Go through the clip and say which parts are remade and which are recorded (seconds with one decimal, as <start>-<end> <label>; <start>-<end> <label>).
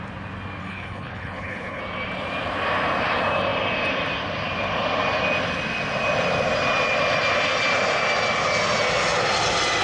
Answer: 0.0-0.6 recorded; 0.6-1.8 remade; 1.8-9.8 recorded